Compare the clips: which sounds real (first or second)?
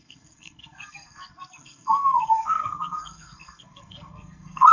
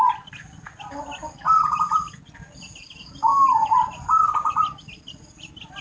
second